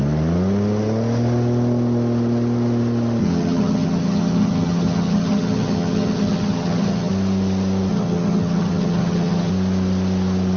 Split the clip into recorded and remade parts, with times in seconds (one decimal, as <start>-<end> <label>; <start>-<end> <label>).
0.0-3.2 recorded; 3.2-7.1 remade; 7.1-7.9 recorded; 7.9-9.5 remade; 9.5-10.6 recorded